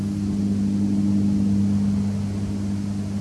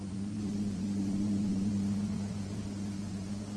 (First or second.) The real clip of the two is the first